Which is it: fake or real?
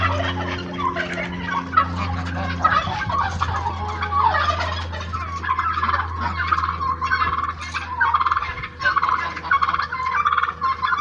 real